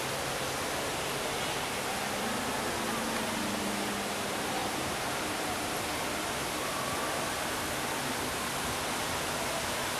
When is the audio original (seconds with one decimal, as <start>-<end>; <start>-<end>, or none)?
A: 0.0-4.6; 5.7-10.0